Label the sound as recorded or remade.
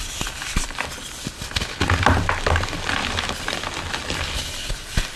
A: recorded